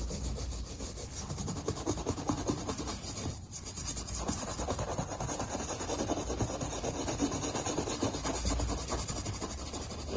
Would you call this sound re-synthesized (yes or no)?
no